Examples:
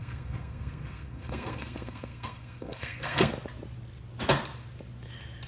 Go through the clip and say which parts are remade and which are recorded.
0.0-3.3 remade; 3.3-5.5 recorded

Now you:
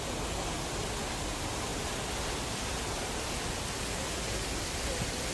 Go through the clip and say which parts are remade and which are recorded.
0.0-5.3 recorded

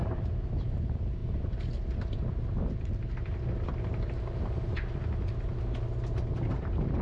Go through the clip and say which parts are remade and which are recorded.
0.0-7.0 recorded

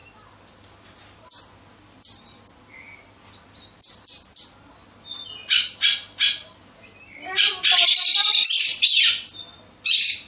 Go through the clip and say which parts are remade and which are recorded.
0.0-10.3 recorded